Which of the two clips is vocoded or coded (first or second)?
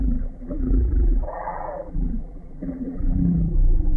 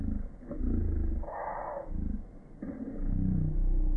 first